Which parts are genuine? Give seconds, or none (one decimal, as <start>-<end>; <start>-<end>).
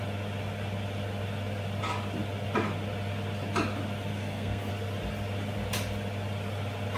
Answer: 0.0-4.1; 4.7-7.0